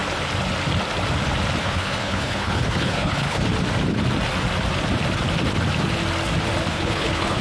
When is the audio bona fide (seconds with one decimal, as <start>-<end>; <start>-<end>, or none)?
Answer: 0.0-1.6; 3.4-6.7